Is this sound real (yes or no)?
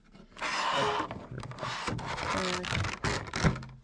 yes